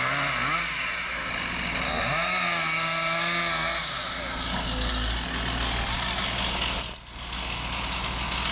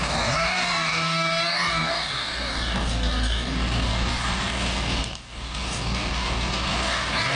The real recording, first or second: first